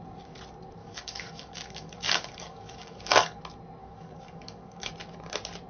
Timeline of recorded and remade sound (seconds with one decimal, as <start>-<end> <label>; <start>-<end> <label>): 0.0-0.8 recorded; 0.8-3.4 remade; 3.4-3.8 recorded; 3.8-4.9 remade; 4.9-5.7 recorded